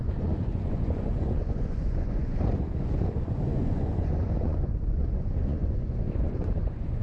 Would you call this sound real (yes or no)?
no